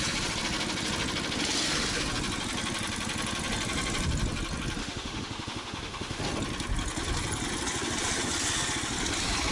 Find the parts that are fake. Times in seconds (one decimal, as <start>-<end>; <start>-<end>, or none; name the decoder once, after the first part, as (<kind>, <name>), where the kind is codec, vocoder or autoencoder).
4.8-6.2 (autoencoder, DAC-VAE)